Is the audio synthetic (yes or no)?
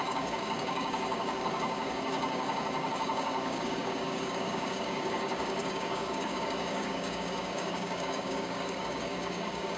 yes